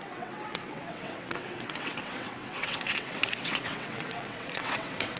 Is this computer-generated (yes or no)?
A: yes